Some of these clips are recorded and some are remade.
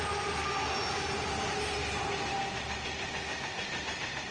recorded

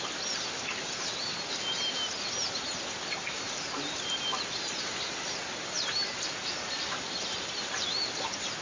recorded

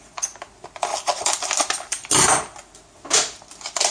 recorded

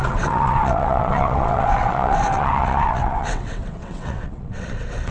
remade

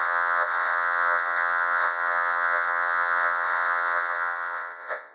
remade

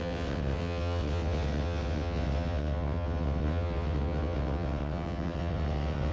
remade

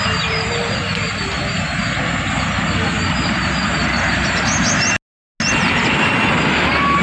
recorded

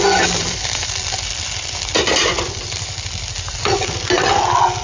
recorded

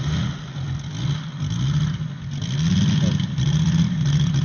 recorded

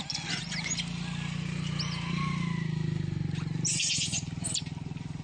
recorded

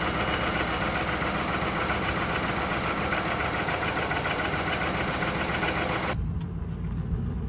recorded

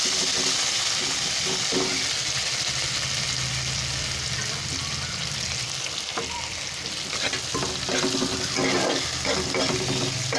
recorded